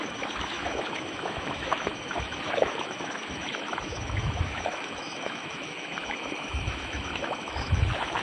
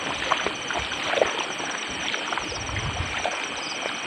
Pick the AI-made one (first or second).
first